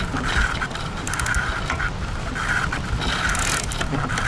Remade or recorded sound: recorded